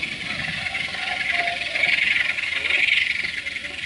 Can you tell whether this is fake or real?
real